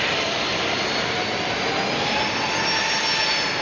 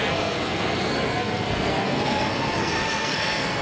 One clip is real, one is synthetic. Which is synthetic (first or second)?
second